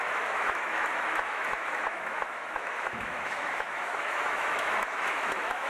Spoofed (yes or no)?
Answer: yes